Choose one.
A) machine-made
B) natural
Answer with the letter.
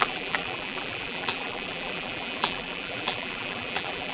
A